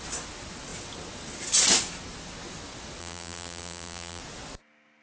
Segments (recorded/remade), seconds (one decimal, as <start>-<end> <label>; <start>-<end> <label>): 0.0-3.0 recorded; 3.0-4.2 remade; 4.2-5.0 recorded